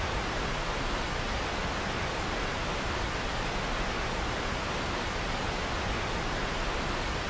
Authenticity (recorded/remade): recorded